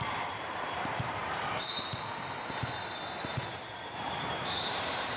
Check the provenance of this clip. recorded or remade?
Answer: remade